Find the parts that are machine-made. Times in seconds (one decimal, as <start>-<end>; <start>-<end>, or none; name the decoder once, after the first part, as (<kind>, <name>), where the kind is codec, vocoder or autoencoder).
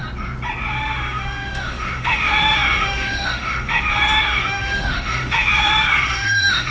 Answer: 0.7-6.7 (autoencoder, DAC-VAE)